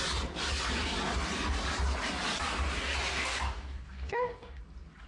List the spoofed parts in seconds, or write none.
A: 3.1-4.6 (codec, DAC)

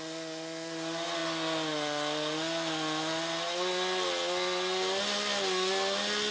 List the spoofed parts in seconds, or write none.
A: none

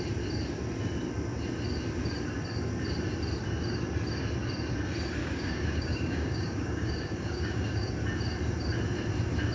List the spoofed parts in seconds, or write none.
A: 5.2-7.9 (codec, DAC)

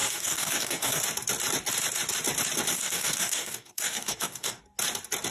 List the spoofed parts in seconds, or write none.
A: 0.0-1.0 (codec, DAC); 2.7-4.6